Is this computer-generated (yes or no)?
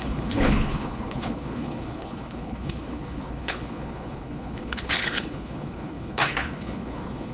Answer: yes